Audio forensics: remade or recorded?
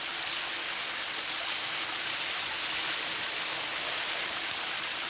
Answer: recorded